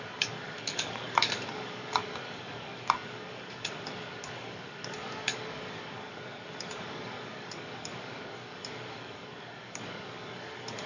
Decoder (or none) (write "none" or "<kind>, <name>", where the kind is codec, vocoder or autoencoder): codec, DAC